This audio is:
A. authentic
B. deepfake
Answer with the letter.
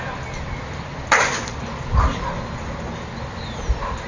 A